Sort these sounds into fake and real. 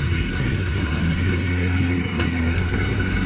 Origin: fake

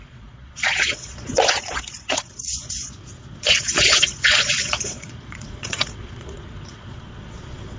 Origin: fake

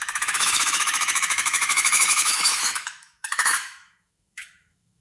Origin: fake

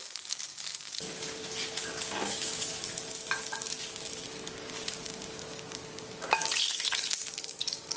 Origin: fake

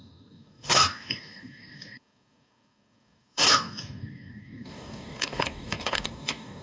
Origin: fake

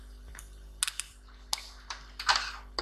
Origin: real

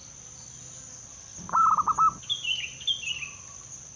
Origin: real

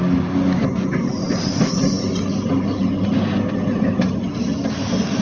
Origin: real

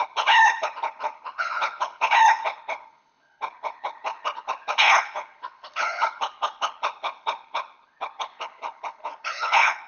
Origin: fake